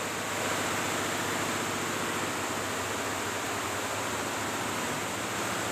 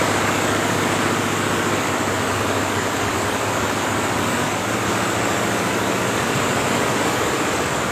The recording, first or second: first